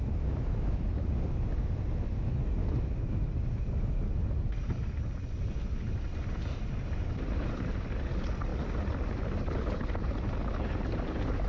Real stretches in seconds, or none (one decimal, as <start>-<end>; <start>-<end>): 0.0-11.5